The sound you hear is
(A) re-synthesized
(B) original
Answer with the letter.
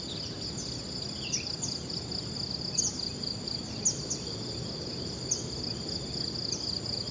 B